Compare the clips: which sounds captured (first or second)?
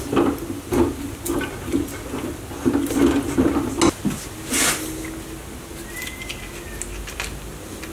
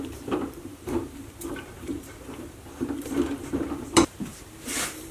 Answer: first